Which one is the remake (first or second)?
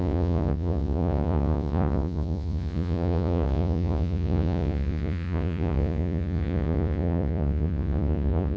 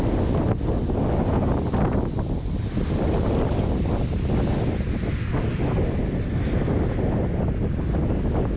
first